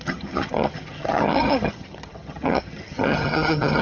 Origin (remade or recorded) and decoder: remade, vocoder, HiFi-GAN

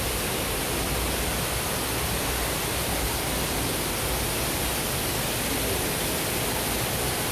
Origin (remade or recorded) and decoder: recorded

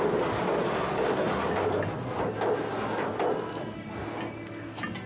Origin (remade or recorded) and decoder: recorded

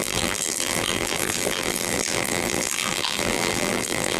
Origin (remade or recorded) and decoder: remade, vocoder, BigVGAN v2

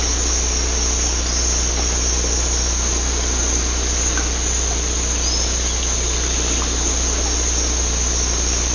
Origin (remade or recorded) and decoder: recorded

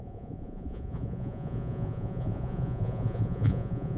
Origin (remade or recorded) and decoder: remade, vocoder, Vocos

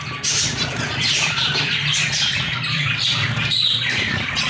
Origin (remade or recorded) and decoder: remade, vocoder, BigVGAN v2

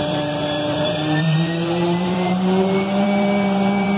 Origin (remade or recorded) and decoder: remade, vocoder, BigVGAN v2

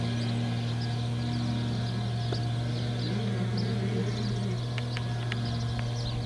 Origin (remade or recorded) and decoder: recorded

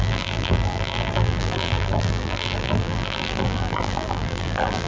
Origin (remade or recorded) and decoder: remade, vocoder, BigVGAN v2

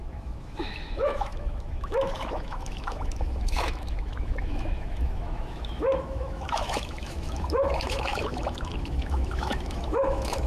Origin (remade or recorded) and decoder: remade, autoencoder, DAC-VAE